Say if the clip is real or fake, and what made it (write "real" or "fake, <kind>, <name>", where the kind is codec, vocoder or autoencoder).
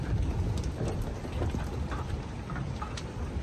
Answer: real